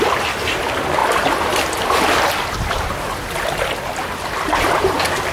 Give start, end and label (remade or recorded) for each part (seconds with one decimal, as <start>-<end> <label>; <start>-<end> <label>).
0.0-5.3 recorded